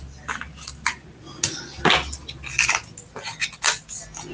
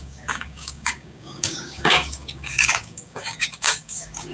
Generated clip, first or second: second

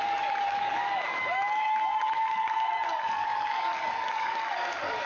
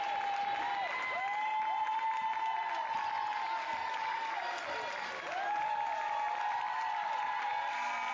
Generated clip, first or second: first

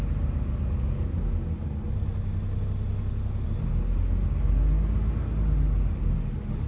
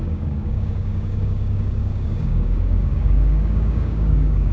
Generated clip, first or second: second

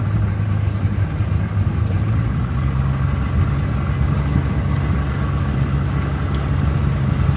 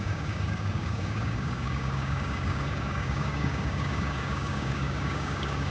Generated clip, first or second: second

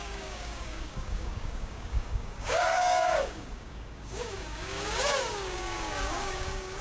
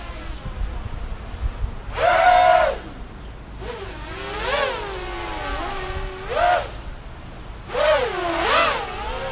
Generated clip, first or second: first